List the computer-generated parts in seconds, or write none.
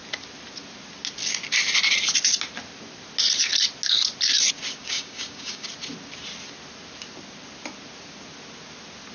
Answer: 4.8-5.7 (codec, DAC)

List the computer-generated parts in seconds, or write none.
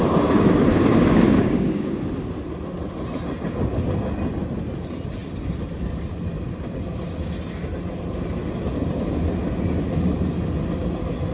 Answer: 0.7-2.0 (codec, DAC)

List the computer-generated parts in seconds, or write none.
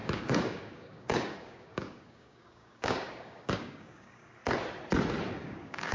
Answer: 0.0-4.4 (codec, DAC); 5.4-5.9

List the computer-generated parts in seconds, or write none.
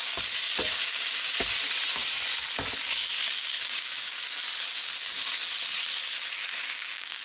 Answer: 0.7-1.3 (codec, DAC); 3.0-4.3; 6.5-7.2